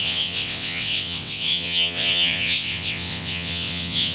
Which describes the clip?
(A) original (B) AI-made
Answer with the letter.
B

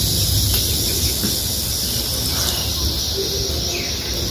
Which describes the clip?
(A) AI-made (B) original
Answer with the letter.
B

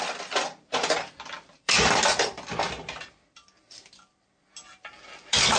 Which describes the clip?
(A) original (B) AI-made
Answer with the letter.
B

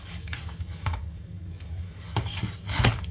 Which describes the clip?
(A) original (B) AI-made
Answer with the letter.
B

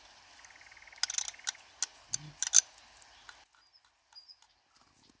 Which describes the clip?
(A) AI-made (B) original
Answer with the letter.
B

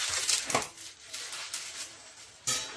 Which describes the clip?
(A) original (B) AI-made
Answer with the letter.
A